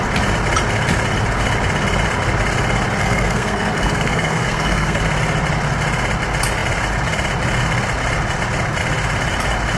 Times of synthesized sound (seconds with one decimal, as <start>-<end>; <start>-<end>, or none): 3.0-5.0